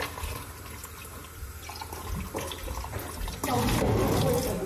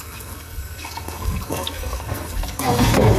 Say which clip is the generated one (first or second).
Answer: second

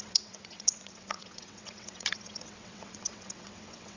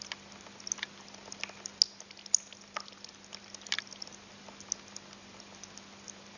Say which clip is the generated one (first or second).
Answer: first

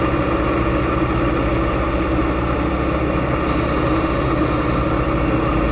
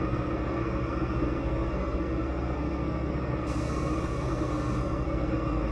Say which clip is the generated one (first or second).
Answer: second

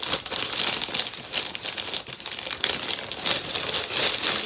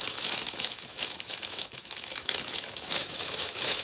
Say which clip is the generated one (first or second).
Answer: second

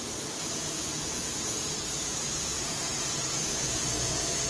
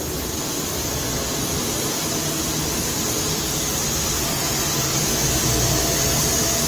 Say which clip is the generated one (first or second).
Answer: first